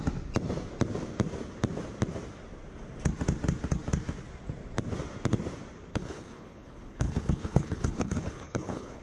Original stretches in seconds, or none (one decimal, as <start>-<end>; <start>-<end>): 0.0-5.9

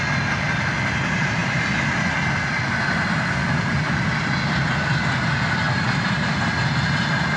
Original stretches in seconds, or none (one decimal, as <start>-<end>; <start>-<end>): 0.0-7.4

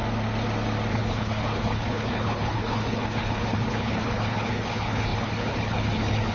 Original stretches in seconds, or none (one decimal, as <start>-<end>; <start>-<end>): 0.0-0.9

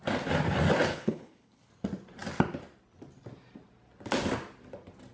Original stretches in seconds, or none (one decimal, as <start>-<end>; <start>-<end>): 0.0-0.9; 1.7-5.1

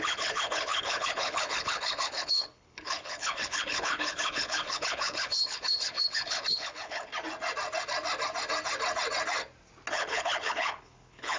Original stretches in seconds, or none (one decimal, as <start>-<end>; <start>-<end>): 7.1-9.9